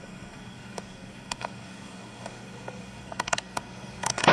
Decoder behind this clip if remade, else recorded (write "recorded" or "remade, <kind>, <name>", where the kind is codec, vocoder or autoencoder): remade, codec, SNAC